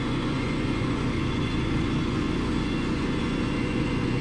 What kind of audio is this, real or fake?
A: fake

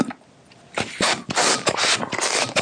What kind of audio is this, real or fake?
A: real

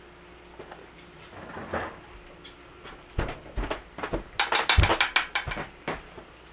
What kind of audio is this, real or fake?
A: real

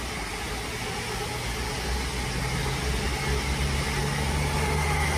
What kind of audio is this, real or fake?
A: real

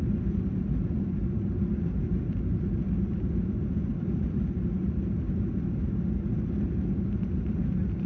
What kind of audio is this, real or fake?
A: real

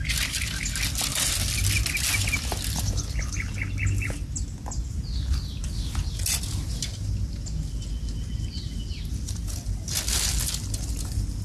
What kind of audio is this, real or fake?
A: real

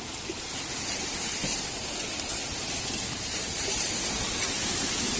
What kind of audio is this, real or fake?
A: real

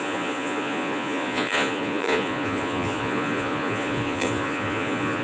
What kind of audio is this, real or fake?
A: fake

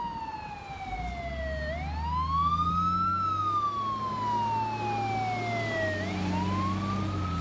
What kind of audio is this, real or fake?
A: real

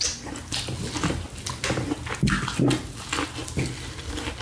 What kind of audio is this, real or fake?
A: real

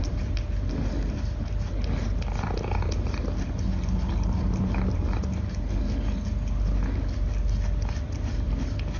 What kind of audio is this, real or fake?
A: real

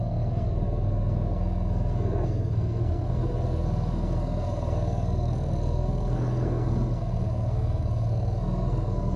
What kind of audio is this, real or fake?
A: fake